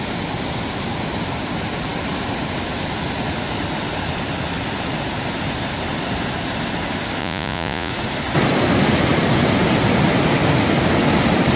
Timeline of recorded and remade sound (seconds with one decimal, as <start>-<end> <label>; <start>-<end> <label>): 0.0-7.2 recorded; 7.2-7.9 remade; 7.9-11.6 recorded